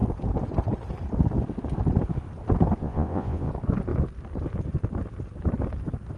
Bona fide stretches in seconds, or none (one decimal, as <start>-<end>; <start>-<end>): 0.0-2.8; 3.5-6.2